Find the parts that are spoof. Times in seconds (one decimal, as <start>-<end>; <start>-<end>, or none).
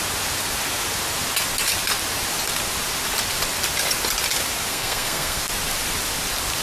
4.7-5.4